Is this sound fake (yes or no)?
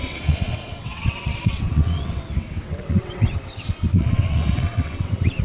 yes